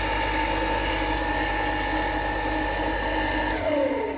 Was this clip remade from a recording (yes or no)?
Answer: no